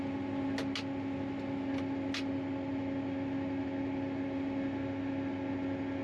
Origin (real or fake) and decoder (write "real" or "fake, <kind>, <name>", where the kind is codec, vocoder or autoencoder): real